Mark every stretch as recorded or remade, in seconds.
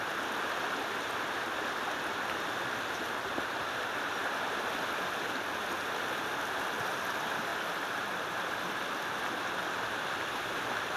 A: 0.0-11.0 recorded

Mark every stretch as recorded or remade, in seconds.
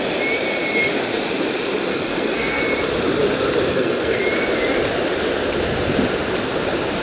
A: 0.0-1.9 recorded; 1.9-2.6 remade; 2.6-3.7 recorded; 3.7-4.2 remade; 4.2-7.0 recorded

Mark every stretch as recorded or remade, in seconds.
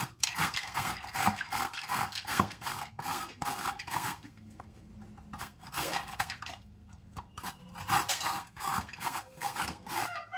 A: 0.0-4.9 remade; 4.9-5.4 recorded; 5.4-7.6 remade; 7.6-8.1 recorded; 8.1-10.4 remade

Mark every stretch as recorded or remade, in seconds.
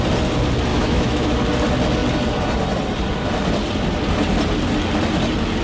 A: 0.0-0.7 recorded; 0.7-1.4 remade; 1.4-5.6 recorded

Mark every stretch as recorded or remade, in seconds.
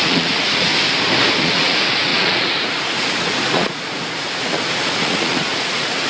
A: 0.0-0.7 remade; 0.7-1.4 recorded; 1.4-6.1 remade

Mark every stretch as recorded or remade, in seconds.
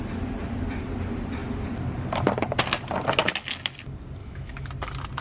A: 0.0-4.2 recorded; 4.2-4.7 remade; 4.7-5.2 recorded